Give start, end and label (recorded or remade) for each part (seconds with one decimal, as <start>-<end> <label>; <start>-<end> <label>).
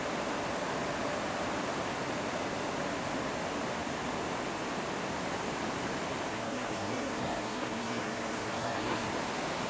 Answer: 0.0-6.3 recorded; 6.3-9.1 remade; 9.1-9.7 recorded